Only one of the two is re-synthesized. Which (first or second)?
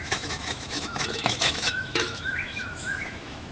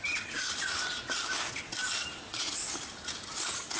first